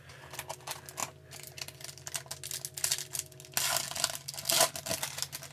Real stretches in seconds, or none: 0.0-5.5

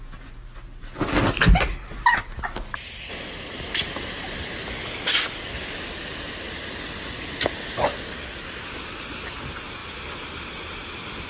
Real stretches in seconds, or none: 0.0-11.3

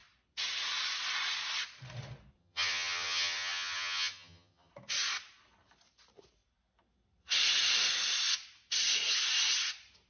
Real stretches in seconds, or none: 0.0-2.4; 4.7-10.1